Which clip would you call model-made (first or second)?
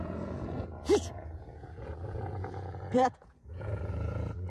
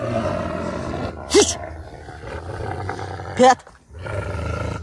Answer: first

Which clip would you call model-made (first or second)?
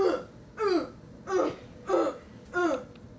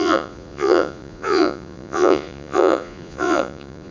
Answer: second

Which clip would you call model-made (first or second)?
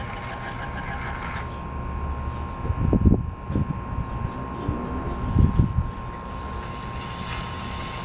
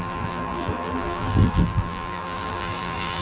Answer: second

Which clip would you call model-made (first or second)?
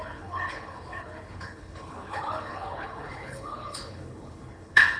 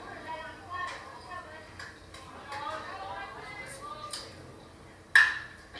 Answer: first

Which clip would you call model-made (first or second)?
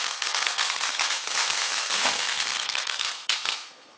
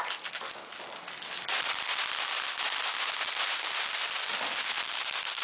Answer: first